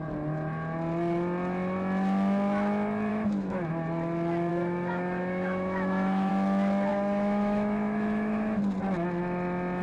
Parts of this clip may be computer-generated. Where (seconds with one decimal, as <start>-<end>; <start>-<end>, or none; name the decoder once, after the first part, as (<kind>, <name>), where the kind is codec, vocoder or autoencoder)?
3.1-3.7 (autoencoder, DAC-VAE); 4.5-6.3; 6.9-8.6

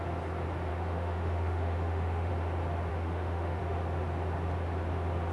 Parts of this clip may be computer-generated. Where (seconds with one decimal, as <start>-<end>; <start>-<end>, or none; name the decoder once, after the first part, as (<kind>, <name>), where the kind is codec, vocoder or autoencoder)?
0.7-2.3 (autoencoder, DAC-VAE); 2.9-3.6

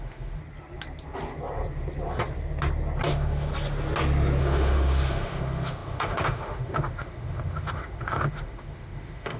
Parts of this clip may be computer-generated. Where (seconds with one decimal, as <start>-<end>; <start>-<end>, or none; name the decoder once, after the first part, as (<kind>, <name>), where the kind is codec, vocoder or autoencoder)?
0.0-0.4 (autoencoder, DAC-VAE); 3.1-3.5; 4.4-9.4

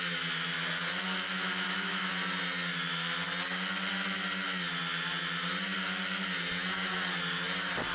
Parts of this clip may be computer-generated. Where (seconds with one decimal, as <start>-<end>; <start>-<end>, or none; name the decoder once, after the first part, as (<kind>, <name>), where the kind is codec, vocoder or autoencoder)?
1.3-2.1 (autoencoder, DAC-VAE)